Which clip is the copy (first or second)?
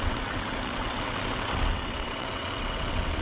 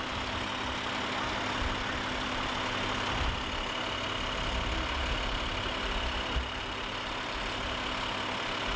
first